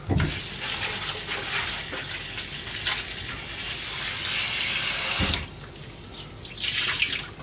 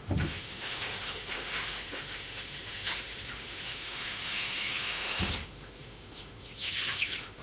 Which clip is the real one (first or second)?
first